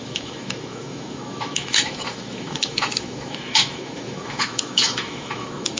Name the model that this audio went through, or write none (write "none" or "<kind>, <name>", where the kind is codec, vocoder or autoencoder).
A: autoencoder, DAC-VAE